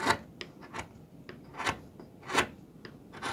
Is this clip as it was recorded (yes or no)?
yes